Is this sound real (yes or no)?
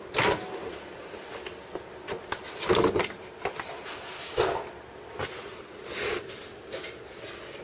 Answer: yes